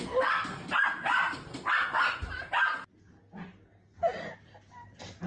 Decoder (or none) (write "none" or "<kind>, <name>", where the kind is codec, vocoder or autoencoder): none